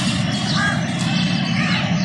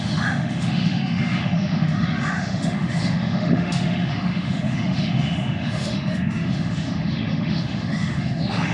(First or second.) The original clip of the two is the first